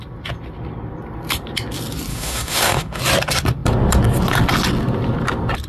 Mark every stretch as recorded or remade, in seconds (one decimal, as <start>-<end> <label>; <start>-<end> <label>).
0.0-2.1 recorded; 2.1-3.0 remade; 3.0-5.7 recorded